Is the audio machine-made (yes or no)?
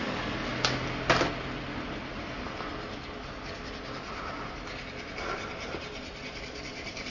no